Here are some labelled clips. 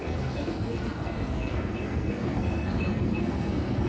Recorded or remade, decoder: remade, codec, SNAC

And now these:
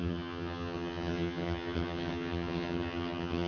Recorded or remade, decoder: remade, vocoder, HiFi-GAN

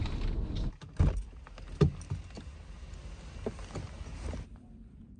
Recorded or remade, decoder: recorded